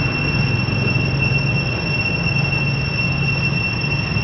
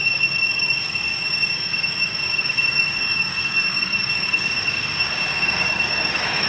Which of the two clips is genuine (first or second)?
first